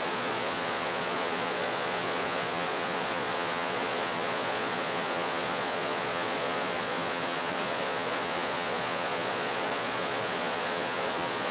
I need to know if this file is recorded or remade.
remade